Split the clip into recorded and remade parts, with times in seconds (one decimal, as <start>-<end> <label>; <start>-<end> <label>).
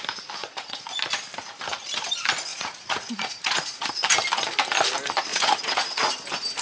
0.0-0.4 recorded; 0.4-0.9 remade; 0.9-2.5 recorded; 2.5-3.9 remade; 3.9-5.3 recorded; 5.3-6.0 remade; 6.0-6.6 recorded